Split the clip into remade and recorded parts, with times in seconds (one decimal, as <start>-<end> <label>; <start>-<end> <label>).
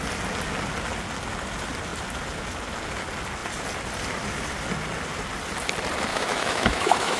0.0-6.1 recorded; 6.1-7.2 remade